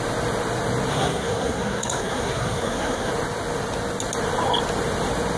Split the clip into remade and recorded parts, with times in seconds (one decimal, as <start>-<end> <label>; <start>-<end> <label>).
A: 0.0-0.9 recorded; 0.9-3.1 remade; 3.1-5.4 recorded